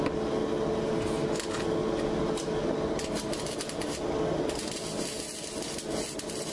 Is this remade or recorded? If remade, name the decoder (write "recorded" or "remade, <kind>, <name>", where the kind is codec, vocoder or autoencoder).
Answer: recorded